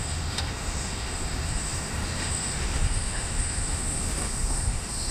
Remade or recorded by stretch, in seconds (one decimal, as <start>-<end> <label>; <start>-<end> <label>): 0.0-5.1 remade